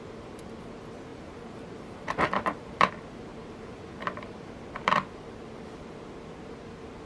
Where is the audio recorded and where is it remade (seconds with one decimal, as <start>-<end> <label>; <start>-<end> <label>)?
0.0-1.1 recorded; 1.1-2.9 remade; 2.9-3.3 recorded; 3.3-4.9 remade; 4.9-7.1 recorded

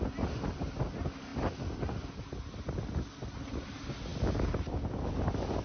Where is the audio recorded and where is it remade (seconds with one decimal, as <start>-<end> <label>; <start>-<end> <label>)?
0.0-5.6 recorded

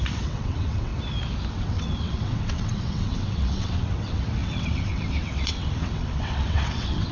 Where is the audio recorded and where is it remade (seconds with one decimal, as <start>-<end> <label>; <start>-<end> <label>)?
0.0-0.9 remade; 0.9-1.5 recorded; 1.5-7.1 remade

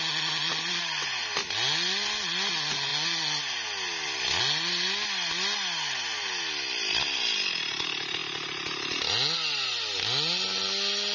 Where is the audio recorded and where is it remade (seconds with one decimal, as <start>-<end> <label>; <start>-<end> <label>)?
0.0-11.1 recorded

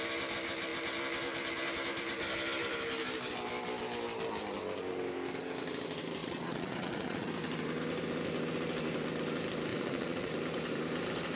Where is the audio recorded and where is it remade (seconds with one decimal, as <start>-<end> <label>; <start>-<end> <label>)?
0.0-6.2 recorded; 6.2-7.3 remade; 7.3-9.7 recorded; 9.7-10.3 remade; 10.3-11.4 recorded